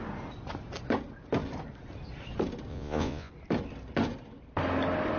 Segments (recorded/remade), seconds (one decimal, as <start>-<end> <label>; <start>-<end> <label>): 0.0-2.7 recorded; 2.7-3.3 remade; 3.3-5.2 recorded